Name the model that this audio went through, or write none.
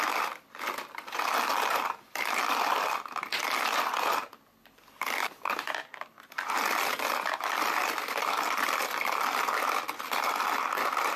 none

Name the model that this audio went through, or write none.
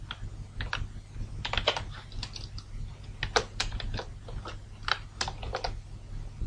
none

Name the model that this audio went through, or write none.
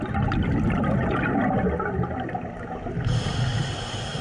none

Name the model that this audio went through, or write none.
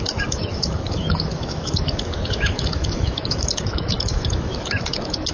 autoencoder, DAC-VAE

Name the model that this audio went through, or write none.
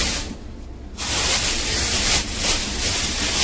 none